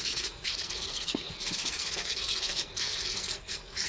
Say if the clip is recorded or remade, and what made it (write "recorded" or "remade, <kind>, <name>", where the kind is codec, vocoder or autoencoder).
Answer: remade, codec, SNAC